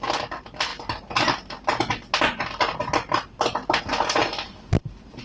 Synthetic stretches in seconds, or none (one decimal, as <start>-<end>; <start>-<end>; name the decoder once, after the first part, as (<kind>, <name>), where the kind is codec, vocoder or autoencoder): 0.0-0.7 (vocoder, BigVGAN v2); 3.8-4.2; 4.8-5.2